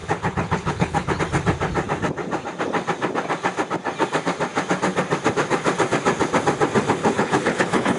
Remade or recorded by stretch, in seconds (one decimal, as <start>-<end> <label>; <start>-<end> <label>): 0.0-1.2 remade; 1.2-7.0 recorded; 7.0-8.0 remade

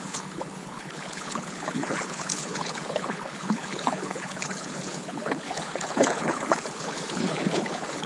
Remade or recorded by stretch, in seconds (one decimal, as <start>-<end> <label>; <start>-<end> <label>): 0.0-8.1 remade

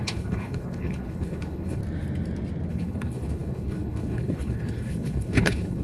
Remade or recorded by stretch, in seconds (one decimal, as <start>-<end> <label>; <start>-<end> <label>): 0.0-1.8 remade; 1.8-2.7 recorded; 2.7-5.8 remade

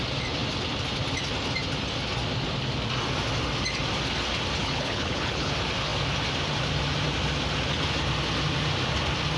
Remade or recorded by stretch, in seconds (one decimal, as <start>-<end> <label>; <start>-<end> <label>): 0.0-4.6 recorded; 4.6-5.5 remade; 5.5-9.4 recorded